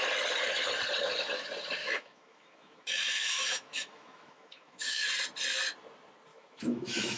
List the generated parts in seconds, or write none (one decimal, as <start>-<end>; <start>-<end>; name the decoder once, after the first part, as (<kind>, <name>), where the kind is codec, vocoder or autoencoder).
1.8-5.1 (autoencoder, DAC-VAE); 6.3-7.2